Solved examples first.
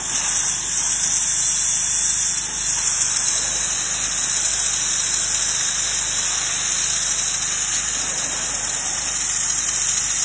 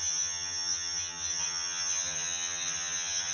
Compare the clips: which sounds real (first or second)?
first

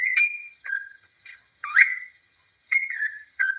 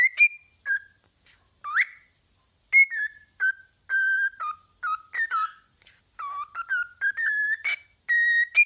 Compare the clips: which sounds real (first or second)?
second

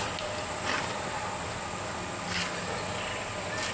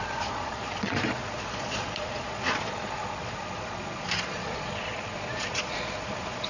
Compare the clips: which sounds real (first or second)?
first